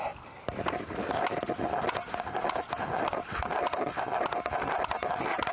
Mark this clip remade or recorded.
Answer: recorded